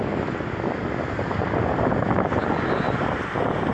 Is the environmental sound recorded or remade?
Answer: recorded